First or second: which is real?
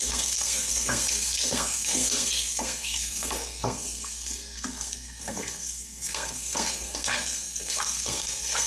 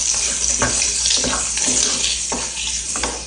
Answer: second